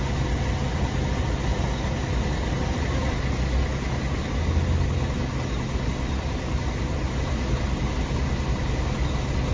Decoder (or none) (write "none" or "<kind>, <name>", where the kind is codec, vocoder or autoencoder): none